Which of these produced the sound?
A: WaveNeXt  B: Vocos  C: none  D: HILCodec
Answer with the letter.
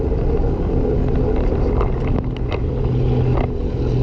C